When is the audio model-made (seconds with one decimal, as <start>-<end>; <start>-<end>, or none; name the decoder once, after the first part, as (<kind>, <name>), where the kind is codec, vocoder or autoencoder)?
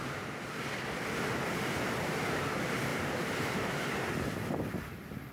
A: 2.9-4.1 (vocoder, BigVGAN v2)